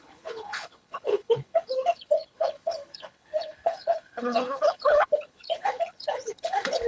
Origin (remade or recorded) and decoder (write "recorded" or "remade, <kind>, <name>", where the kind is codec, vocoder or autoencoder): remade, codec, HILCodec